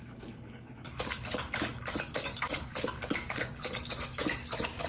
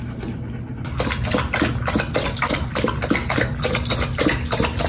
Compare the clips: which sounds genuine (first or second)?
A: second